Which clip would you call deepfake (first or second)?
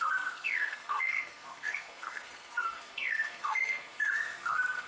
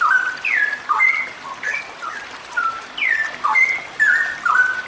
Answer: first